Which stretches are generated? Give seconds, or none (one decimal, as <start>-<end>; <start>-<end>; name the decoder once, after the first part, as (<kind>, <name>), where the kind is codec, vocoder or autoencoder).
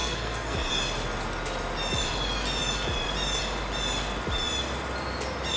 0.0-0.7 (codec, SNAC)